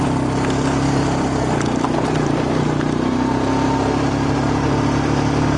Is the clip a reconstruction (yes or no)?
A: yes